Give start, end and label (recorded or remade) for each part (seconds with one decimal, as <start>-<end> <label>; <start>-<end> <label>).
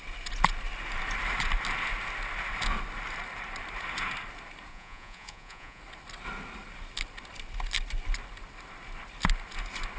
0.0-4.7 recorded; 4.7-5.8 remade; 5.8-10.0 recorded